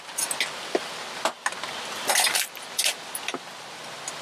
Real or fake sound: real